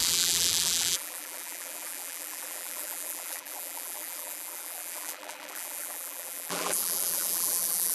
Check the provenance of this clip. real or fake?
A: fake